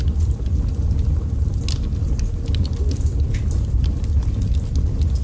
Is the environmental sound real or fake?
real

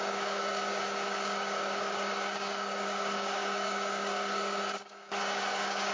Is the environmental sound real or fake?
fake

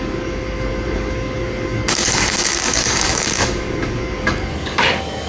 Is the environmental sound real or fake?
fake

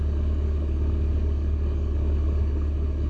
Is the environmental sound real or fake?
fake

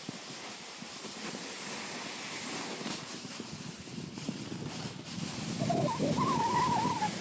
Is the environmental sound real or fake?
real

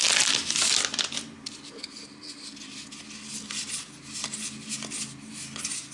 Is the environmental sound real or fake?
real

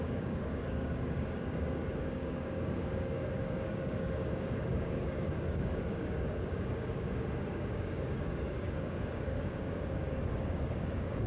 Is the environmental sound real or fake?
fake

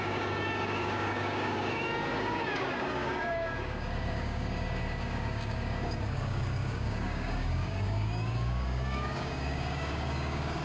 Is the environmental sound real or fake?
fake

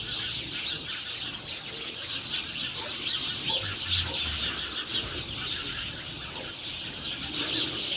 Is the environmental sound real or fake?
real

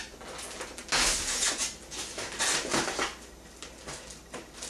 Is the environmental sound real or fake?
real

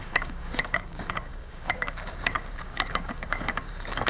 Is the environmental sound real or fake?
fake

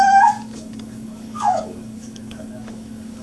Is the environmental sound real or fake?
fake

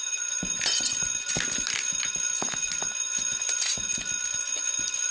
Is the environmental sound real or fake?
real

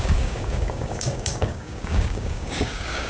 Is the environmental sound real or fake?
fake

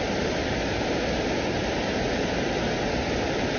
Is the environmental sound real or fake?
real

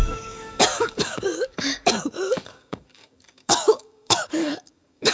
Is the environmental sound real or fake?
fake